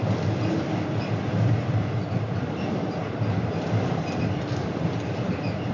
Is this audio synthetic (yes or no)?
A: no